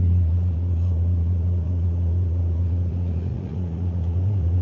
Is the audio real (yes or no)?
no